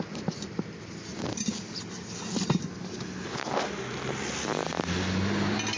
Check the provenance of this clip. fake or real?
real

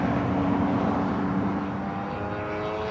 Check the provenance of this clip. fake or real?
real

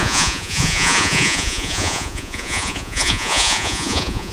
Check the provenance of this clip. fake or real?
fake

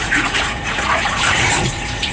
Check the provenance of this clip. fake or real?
fake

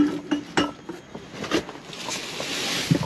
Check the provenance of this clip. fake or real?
real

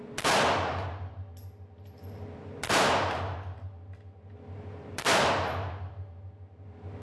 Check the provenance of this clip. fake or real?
real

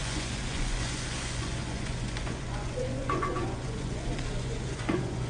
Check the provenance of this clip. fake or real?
fake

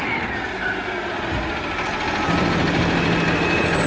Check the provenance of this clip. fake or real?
real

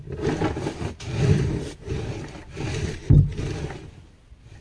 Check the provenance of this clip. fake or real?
real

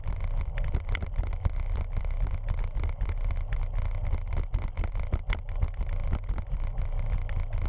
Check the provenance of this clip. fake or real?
real